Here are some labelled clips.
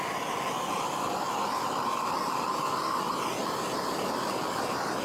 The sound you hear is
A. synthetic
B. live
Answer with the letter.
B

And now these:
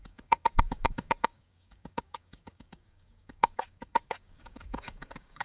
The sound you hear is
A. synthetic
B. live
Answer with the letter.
A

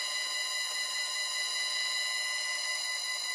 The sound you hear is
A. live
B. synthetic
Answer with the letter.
A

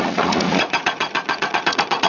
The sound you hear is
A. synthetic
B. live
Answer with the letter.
A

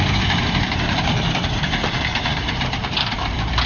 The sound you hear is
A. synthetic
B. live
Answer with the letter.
A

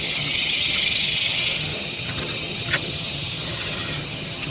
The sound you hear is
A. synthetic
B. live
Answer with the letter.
A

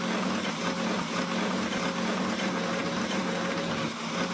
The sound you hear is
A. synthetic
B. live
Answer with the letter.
B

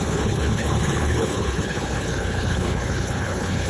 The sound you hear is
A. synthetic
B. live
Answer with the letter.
A